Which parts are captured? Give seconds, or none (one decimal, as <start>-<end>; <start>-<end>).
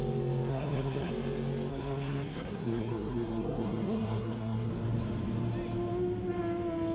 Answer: 0.0-0.5; 1.1-1.7; 4.7-6.9